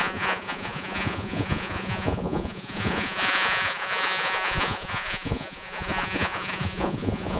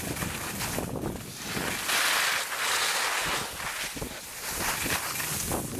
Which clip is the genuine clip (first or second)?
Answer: second